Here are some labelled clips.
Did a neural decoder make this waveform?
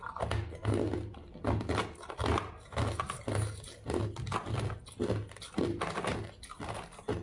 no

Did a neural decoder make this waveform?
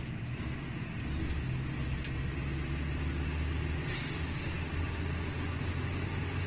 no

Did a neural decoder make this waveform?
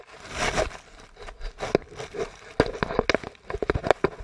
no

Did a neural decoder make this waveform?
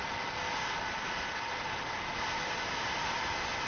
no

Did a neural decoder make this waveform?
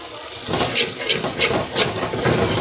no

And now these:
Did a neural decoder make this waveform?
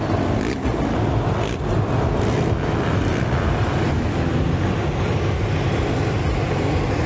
no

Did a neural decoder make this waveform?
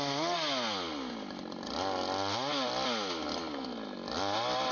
no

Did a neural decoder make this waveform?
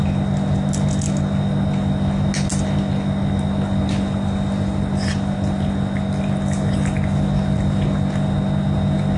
no